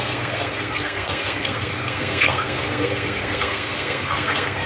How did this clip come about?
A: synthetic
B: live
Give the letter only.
A